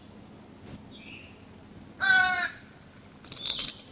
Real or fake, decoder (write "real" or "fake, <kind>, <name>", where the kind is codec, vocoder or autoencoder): real